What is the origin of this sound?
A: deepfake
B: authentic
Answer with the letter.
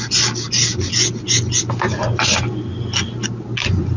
B